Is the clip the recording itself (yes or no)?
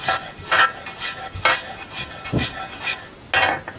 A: yes